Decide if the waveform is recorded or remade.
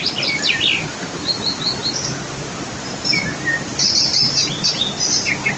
recorded